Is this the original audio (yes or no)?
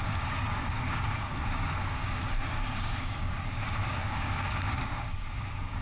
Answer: no